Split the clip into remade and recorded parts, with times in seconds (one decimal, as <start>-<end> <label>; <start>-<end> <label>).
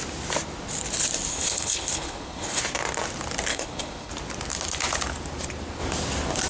0.0-1.3 recorded; 1.3-2.6 remade; 2.6-3.5 recorded; 3.5-4.1 remade; 4.1-6.5 recorded